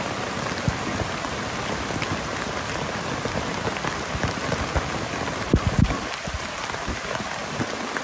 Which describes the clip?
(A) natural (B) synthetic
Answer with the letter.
A